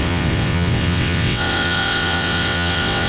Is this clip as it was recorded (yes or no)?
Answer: no